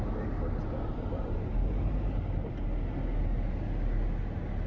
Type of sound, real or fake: real